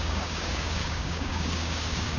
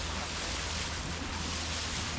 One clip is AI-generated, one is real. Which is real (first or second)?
second